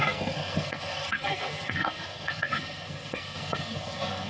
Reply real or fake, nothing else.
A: fake